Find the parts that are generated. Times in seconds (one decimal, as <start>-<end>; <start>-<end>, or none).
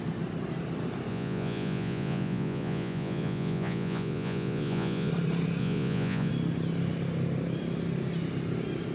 1.1-5.1; 5.6-6.3